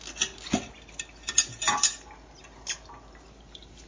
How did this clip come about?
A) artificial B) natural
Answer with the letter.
B